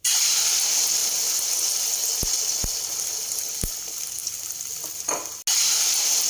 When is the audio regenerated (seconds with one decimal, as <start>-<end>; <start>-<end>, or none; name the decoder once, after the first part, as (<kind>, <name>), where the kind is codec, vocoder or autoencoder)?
none